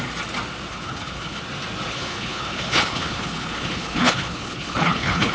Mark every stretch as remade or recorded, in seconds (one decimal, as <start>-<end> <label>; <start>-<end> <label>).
0.0-0.7 recorded; 0.7-1.4 remade; 1.4-1.9 recorded; 1.9-5.3 remade